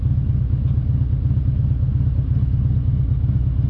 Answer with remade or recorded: recorded